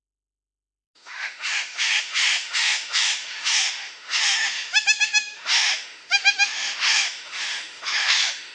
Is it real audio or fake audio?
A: fake